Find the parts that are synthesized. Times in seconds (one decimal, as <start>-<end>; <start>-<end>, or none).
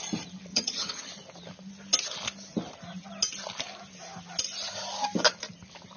0.5-1.1